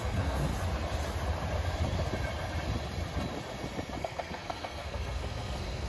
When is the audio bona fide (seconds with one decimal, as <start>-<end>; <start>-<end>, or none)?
0.5-4.0

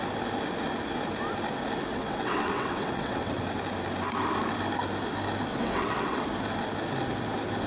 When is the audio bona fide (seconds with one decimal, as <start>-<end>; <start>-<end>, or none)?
0.0-1.9; 3.4-5.5; 6.2-7.7

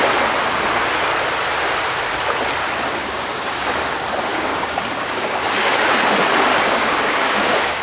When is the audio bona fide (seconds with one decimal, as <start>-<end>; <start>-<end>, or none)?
0.0-3.0; 3.7-4.3; 5.8-6.5

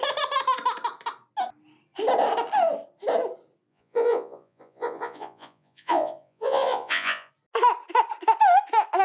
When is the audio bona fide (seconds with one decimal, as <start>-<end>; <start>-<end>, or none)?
0.0-3.7; 7.3-9.0

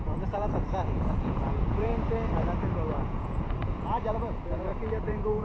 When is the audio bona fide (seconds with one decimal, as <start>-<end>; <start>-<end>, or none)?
1.9-2.9

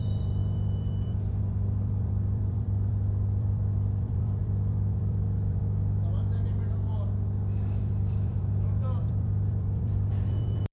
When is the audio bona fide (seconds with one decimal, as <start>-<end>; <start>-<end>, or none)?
5.6-7.8

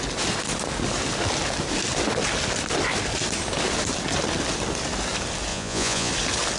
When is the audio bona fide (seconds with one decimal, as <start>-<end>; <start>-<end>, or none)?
0.0-5.5; 6.1-6.6